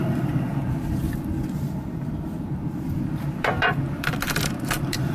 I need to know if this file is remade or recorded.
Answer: remade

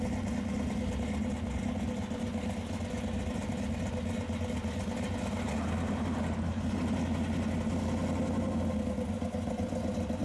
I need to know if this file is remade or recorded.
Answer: recorded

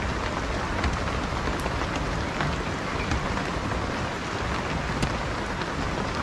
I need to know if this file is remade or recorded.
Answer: recorded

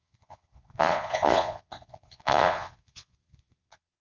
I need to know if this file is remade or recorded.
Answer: remade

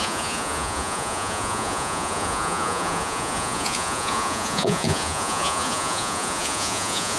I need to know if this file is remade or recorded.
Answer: remade